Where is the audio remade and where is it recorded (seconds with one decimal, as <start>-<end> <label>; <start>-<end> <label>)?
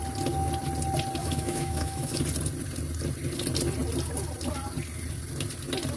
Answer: 0.0-1.2 recorded; 1.2-2.2 remade; 2.2-6.0 recorded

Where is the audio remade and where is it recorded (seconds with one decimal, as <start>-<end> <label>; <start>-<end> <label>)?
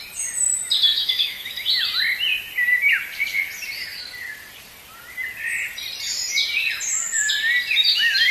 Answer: 0.0-1.0 recorded; 1.0-1.5 remade; 1.5-8.3 recorded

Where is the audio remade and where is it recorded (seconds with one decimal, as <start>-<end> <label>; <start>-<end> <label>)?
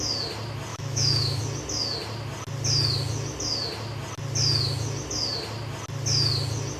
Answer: 0.0-0.7 recorded; 0.7-1.4 remade; 1.4-6.8 recorded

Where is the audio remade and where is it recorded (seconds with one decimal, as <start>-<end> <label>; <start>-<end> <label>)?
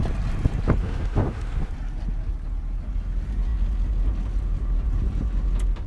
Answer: 0.0-0.8 recorded; 0.8-1.7 remade; 1.7-5.9 recorded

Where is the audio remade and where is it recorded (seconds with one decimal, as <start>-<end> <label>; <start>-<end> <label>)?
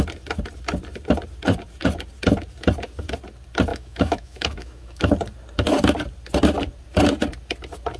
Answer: 0.0-3.7 recorded; 3.7-5.0 remade; 5.0-8.0 recorded